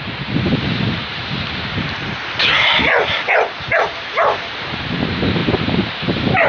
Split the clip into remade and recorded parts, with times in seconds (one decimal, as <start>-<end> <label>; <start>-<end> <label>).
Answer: 0.0-2.4 remade; 2.4-3.2 recorded; 3.2-6.5 remade